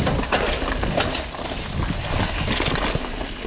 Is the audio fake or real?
real